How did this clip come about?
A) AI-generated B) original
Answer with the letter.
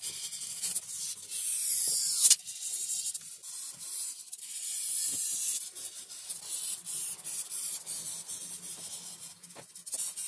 B